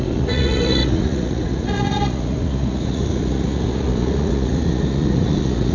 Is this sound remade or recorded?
remade